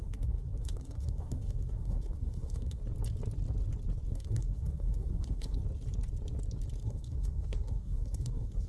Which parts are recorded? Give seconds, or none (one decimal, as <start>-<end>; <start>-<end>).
2.8-4.1; 5.6-6.8